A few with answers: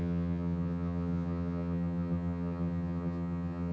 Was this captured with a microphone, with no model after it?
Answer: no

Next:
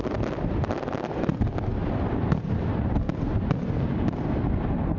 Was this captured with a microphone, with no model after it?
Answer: yes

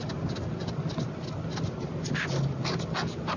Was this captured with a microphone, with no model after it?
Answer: yes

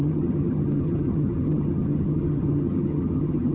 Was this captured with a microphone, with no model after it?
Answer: no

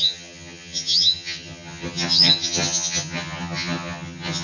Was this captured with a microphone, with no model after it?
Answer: no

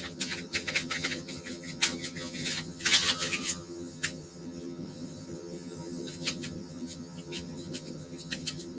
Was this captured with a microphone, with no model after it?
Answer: no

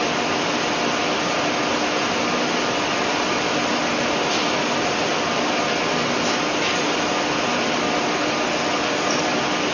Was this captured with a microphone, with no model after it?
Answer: yes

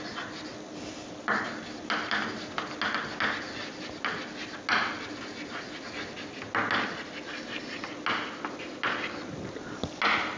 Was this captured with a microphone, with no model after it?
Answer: yes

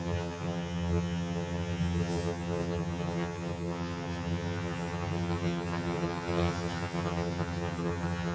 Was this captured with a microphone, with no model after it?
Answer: no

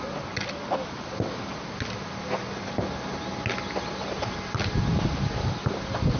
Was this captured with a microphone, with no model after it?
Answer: yes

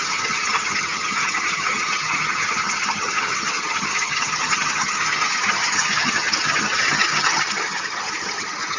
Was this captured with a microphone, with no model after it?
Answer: no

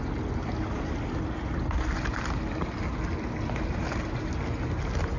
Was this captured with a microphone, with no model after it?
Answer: yes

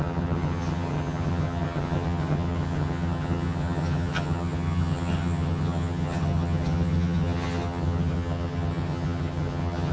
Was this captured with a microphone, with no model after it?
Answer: no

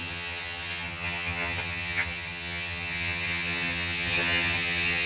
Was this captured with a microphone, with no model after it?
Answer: no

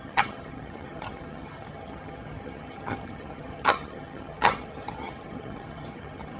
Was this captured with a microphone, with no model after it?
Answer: no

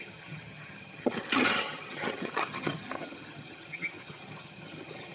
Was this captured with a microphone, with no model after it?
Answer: no